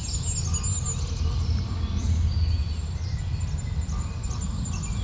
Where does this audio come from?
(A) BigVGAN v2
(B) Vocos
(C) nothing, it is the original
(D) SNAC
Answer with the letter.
C